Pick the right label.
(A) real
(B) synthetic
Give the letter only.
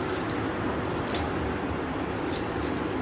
A